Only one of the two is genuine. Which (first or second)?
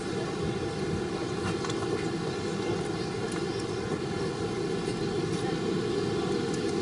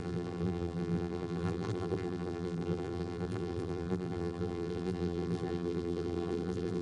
first